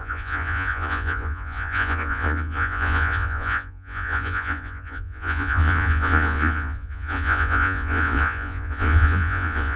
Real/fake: fake